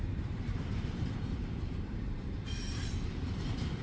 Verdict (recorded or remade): remade